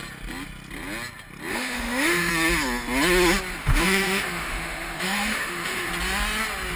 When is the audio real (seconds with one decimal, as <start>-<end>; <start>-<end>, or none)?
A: 0.0-1.5; 2.3-3.6; 5.9-6.8